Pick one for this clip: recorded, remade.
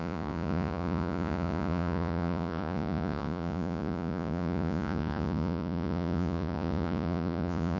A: remade